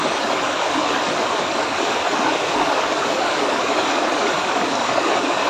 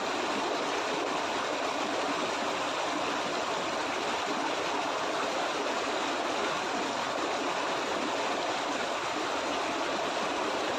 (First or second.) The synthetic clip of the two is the first